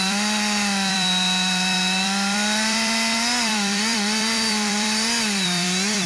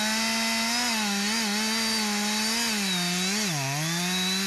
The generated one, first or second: first